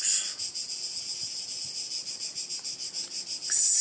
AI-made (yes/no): no